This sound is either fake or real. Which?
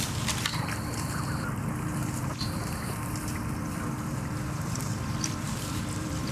fake